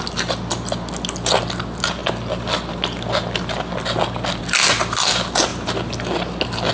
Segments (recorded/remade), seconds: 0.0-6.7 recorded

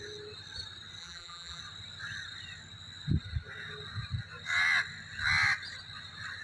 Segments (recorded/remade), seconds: 0.0-1.0 recorded; 1.0-1.6 remade; 1.6-6.4 recorded

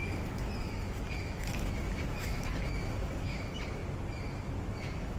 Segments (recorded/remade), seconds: 0.0-3.8 remade; 3.8-4.8 recorded; 4.8-5.2 remade

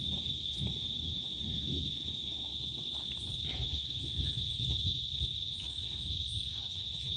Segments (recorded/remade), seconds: 0.0-2.5 remade; 2.5-3.5 recorded; 3.5-7.2 remade

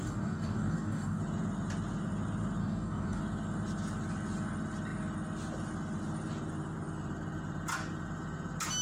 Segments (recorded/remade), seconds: 0.0-1.2 remade; 1.2-2.6 recorded; 2.6-3.2 remade; 3.2-8.8 recorded